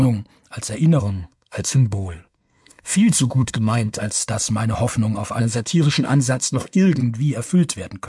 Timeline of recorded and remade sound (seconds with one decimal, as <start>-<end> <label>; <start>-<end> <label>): 0.0-1.0 recorded; 1.0-4.2 remade; 4.2-5.4 recorded; 5.4-7.0 remade; 7.0-8.1 recorded